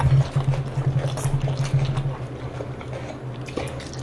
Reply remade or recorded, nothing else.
recorded